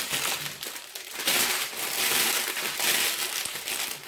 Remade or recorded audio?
recorded